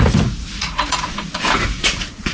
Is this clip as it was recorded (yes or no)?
no